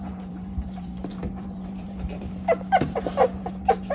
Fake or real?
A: fake